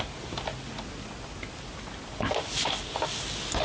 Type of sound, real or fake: real